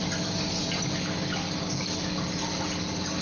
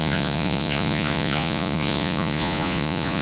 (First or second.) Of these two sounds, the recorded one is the first